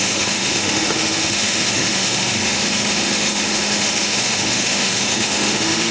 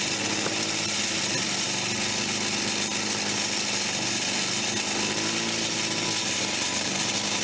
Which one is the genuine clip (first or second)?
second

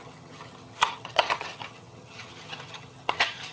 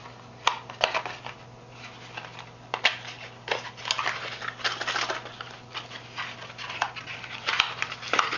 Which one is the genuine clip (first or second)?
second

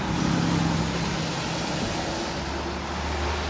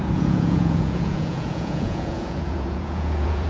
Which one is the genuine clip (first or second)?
first